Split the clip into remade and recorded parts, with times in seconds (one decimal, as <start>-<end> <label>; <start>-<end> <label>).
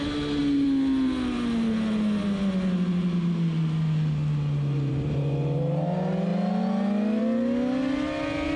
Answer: 0.0-8.6 recorded